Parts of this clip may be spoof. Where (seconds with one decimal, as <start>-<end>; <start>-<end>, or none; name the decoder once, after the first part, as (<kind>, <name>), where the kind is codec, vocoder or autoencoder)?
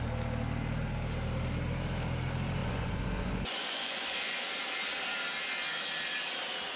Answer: 2.6-4.5 (vocoder, Vocos)